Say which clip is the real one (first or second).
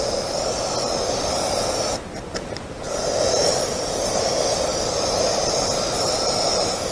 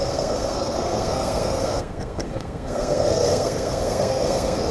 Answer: first